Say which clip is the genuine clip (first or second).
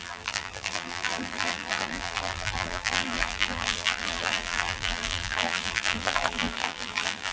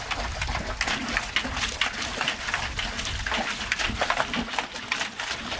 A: second